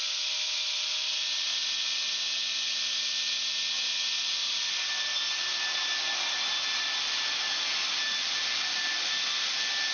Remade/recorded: recorded